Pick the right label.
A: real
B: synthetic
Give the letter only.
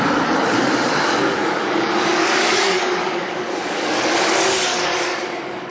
B